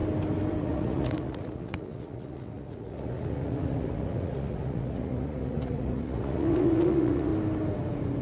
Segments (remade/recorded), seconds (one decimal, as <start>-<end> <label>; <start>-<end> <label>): 0.0-0.6 recorded; 0.6-7.3 remade; 7.3-8.2 recorded